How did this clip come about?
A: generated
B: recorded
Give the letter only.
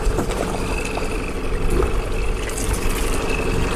B